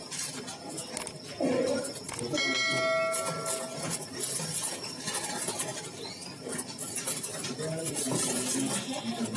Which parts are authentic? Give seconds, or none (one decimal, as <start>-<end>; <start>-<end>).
0.0-9.4